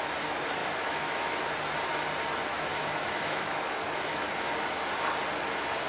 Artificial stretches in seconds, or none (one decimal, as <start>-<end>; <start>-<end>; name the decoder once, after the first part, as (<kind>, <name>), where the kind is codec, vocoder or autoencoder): 0.6-1.4 (autoencoder, DAC-VAE); 2.5-4.2